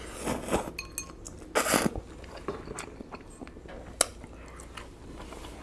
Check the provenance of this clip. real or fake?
real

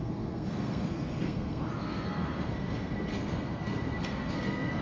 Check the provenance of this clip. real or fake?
fake